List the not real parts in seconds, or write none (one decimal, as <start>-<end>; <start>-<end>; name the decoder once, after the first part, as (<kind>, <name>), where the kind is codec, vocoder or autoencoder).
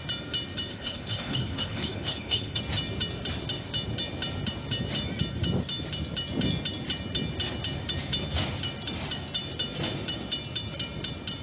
0.7-2.6 (codec, HILCodec)